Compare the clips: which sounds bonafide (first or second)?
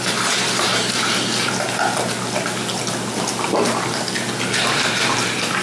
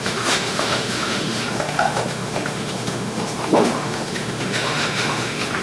first